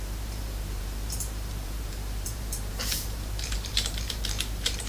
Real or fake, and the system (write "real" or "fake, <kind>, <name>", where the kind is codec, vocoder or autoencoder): fake, vocoder, BigVGAN v2